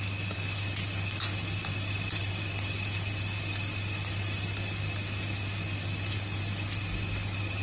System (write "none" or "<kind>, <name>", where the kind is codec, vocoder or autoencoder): none